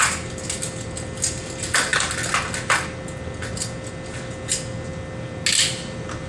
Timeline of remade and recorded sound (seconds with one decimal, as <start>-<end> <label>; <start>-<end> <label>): 0.0-6.3 recorded